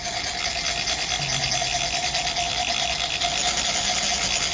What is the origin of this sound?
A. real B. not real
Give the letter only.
A